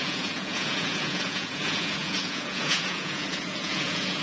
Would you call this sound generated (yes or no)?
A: yes